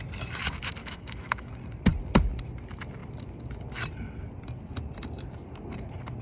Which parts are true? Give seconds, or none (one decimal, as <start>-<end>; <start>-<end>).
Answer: 0.0-0.8; 1.5-6.2